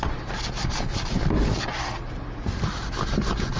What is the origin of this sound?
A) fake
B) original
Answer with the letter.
B